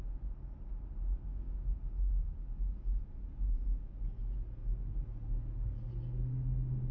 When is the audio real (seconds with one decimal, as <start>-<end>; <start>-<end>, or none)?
0.0-1.3; 1.8-6.9